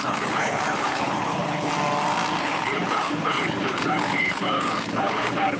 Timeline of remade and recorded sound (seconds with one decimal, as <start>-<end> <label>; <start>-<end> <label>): 0.0-1.7 remade; 1.7-2.4 recorded; 2.4-5.6 remade